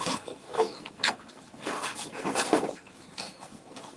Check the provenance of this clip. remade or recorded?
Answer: remade